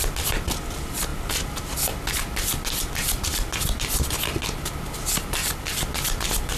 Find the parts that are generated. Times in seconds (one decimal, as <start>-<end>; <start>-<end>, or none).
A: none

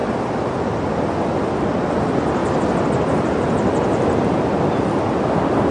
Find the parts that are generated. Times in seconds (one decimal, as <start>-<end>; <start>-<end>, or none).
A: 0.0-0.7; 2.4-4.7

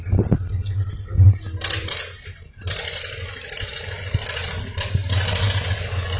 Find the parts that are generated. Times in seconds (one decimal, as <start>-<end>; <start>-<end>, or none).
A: none